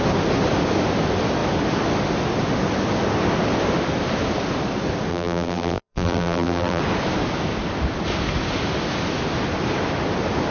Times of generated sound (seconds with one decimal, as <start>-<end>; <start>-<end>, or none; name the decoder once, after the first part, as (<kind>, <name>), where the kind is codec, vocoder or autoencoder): 5.1-6.8 (vocoder, BigVGAN v2)